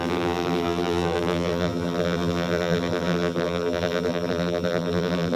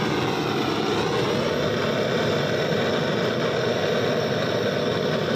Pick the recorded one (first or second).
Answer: second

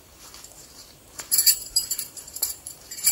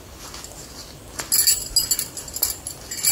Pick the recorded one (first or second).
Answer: second